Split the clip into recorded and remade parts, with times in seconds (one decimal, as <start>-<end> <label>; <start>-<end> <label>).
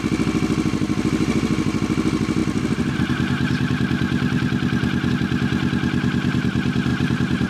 0.0-6.9 recorded; 6.9-7.5 remade